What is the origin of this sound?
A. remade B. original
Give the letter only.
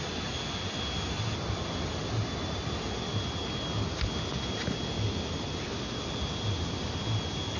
B